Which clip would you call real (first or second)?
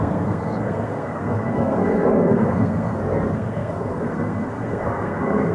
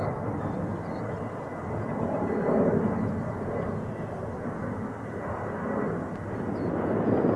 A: second